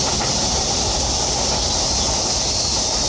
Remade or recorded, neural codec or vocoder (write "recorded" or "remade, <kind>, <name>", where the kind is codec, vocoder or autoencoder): recorded